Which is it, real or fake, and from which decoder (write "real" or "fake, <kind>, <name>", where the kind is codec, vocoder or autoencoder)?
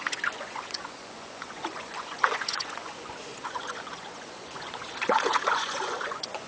fake, vocoder, Vocos